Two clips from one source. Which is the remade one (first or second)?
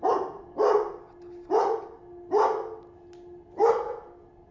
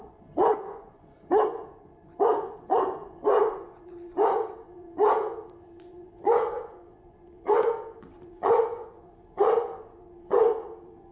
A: second